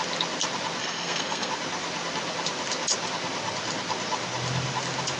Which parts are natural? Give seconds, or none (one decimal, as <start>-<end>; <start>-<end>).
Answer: 0.0-0.8; 1.5-5.2